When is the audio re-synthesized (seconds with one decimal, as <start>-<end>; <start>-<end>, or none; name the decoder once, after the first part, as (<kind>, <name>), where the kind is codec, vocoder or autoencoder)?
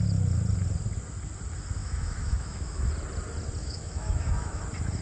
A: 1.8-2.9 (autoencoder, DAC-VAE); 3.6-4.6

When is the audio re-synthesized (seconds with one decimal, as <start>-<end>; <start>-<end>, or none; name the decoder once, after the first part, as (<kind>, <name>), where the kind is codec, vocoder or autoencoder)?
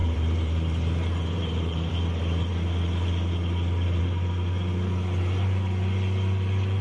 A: 0.0-1.9 (vocoder, BigVGAN v2)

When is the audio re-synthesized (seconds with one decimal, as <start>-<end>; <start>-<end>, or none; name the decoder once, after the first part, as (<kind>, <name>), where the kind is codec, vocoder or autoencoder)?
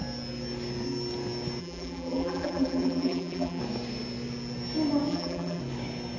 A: 1.6-3.6 (vocoder, BigVGAN v2); 5.1-5.6